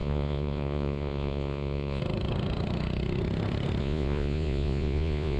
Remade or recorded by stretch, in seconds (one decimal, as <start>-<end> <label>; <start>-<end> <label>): 0.0-2.0 remade; 2.0-3.8 recorded; 3.8-5.4 remade